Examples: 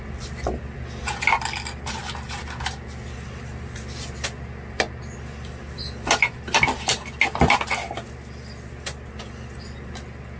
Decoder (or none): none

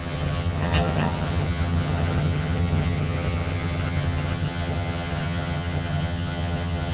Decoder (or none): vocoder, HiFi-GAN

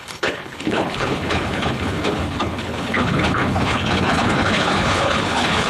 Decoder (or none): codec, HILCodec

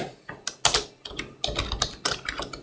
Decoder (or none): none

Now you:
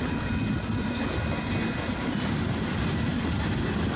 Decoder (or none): none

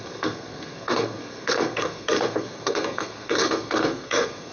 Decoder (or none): codec, SNAC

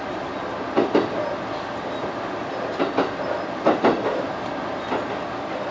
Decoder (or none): none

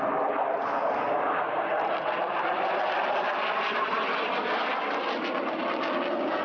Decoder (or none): none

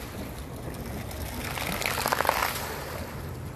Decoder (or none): none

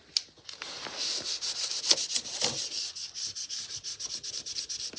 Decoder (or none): none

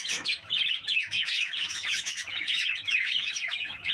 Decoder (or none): autoencoder, DAC-VAE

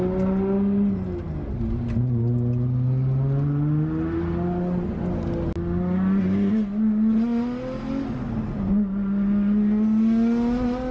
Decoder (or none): none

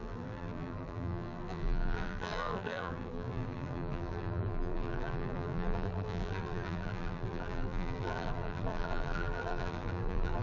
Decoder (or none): vocoder, BigVGAN v2